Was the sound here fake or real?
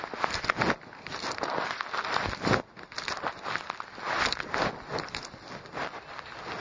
real